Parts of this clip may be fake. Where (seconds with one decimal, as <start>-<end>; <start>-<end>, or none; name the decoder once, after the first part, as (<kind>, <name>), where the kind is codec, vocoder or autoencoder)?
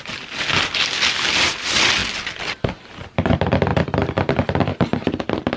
none